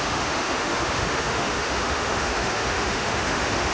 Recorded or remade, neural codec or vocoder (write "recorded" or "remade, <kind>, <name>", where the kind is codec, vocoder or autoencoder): remade, autoencoder, DAC-VAE